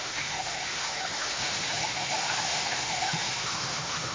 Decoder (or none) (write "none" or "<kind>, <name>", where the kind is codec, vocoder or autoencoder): autoencoder, DAC-VAE